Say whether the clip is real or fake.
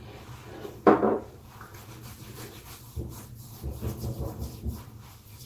real